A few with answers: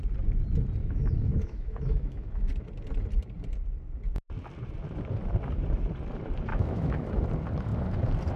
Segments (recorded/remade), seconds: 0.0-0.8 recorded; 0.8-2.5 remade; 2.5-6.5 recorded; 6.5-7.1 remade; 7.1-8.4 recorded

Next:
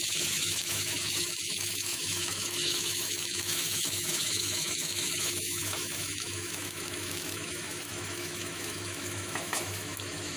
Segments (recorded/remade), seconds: 0.0-10.4 remade

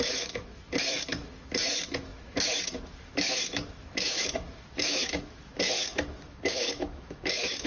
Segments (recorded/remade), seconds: 0.0-7.7 remade

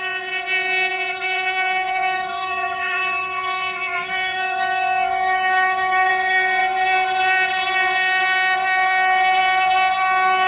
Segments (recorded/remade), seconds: 0.0-0.9 recorded; 0.9-6.1 remade; 6.1-10.5 recorded

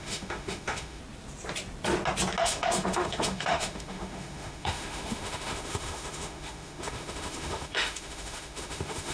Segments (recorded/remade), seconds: 0.0-1.0 remade; 1.0-2.4 recorded; 2.4-9.1 remade

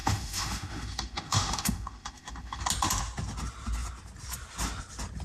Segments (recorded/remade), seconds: 0.0-2.6 remade; 2.6-5.2 recorded

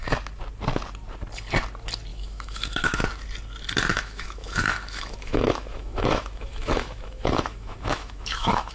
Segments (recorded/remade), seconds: 0.0-2.1 recorded; 2.1-3.0 remade; 3.0-3.9 recorded; 3.9-8.7 remade